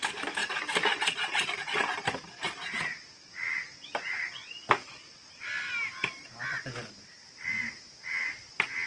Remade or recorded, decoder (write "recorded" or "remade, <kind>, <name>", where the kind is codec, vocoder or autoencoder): recorded